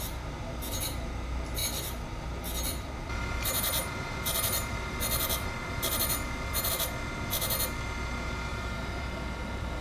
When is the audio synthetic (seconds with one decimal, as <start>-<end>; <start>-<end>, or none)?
1.6-6.7; 8.5-9.8